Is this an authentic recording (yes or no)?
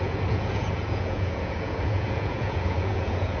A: no